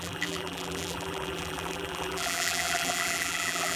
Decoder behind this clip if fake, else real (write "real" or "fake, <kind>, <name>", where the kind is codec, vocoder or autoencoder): fake, vocoder, BigVGAN v2